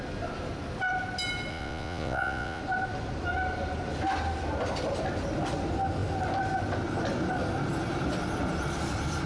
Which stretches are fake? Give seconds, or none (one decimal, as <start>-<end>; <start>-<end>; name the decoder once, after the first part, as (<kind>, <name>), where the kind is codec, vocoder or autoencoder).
1.5-2.6 (vocoder, Vocos)